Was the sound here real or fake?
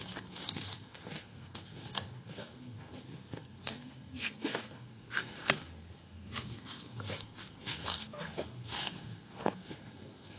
fake